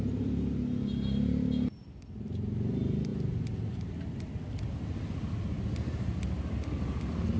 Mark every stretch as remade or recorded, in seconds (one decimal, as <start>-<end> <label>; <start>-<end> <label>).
0.0-7.4 recorded